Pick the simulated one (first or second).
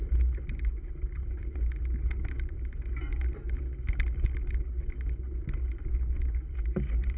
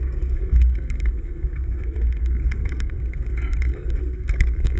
second